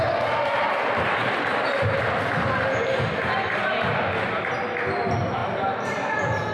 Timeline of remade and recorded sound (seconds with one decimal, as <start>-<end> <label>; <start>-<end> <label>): 0.0-6.5 recorded